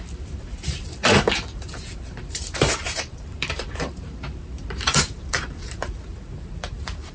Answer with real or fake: fake